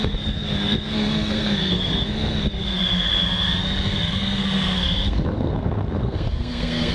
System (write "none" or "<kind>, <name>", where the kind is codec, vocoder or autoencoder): codec, SNAC